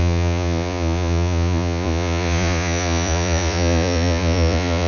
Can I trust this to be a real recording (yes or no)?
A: no